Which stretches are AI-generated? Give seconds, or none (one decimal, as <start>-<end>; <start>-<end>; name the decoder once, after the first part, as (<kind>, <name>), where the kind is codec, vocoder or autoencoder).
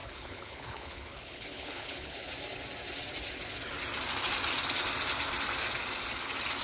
0.0-2.3 (codec, HILCodec)